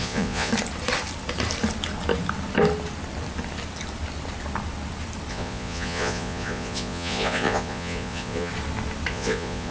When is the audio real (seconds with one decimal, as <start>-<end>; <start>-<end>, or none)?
0.5-5.3; 8.5-9.1